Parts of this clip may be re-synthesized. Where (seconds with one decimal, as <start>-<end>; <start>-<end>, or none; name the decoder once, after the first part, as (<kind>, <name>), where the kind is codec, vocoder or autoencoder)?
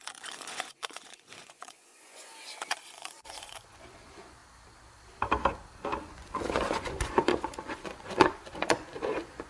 0.0-4.4 (vocoder, Vocos); 6.0-9.5